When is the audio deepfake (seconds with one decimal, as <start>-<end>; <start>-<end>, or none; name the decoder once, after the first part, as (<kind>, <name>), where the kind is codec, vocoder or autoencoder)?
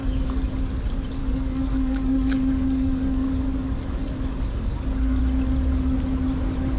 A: 0.0-0.5 (codec, DAC); 1.2-5.2